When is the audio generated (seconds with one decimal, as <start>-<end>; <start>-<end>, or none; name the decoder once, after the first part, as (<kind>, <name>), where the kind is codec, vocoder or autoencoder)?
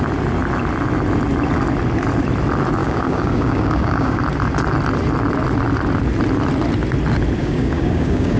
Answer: 2.8-4.2 (codec, DAC); 7.4-8.4